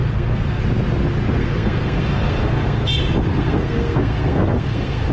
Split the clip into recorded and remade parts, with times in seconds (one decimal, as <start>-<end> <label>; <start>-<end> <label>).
0.0-0.6 remade; 0.6-1.4 recorded; 1.4-2.9 remade; 2.9-3.3 recorded; 3.3-5.1 remade

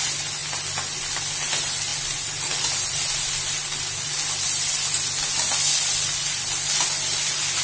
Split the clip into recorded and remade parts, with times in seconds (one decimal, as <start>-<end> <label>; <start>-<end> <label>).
0.0-7.6 recorded

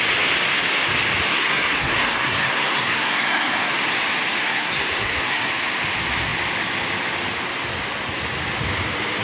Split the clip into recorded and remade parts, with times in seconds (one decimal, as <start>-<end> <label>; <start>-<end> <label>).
0.0-1.3 recorded; 1.3-3.7 remade; 3.7-4.4 recorded; 4.4-5.5 remade; 5.5-9.2 recorded

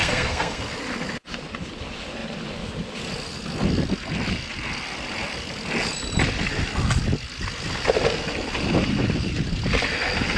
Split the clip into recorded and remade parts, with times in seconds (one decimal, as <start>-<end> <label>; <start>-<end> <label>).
0.0-0.6 remade; 0.6-10.4 recorded

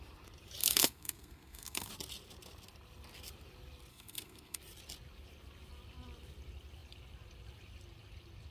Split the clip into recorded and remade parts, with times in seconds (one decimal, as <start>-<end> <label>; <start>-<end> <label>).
0.0-0.6 recorded; 0.6-1.9 remade; 1.9-3.9 recorded; 3.9-4.6 remade; 4.6-8.5 recorded